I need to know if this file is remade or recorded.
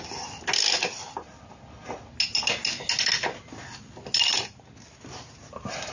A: recorded